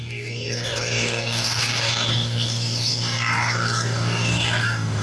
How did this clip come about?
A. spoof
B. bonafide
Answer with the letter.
A